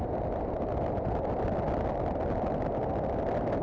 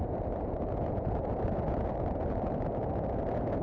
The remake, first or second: second